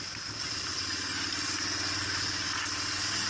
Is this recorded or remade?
recorded